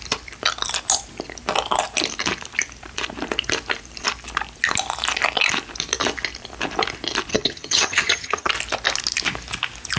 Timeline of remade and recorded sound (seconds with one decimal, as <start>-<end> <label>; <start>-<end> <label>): 0.0-7.3 recorded; 7.3-8.5 remade; 8.5-10.0 recorded